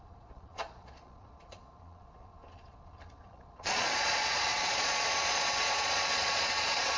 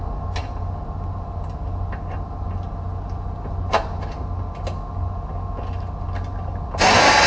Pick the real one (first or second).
second